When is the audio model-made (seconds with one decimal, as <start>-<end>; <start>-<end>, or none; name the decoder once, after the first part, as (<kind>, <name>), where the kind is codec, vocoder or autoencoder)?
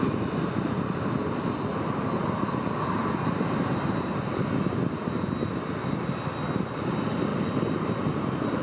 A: none